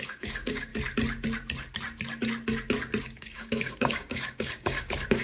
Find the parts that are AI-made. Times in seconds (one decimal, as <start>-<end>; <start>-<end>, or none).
0.0-0.7; 3.0-5.2